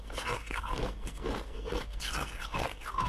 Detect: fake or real fake